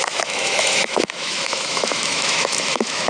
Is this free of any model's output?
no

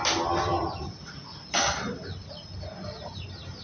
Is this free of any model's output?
yes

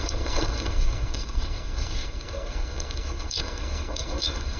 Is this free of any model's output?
no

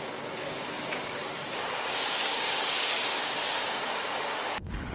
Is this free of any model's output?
no